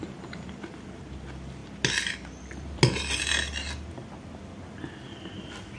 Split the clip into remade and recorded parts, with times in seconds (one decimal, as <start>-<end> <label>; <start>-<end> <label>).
0.0-5.8 recorded